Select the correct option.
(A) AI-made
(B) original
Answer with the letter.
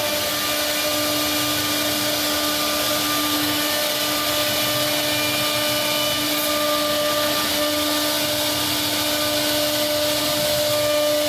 B